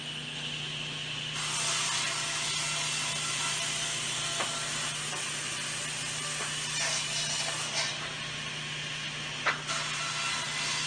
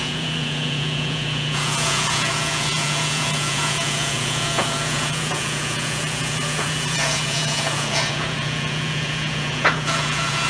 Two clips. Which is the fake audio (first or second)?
second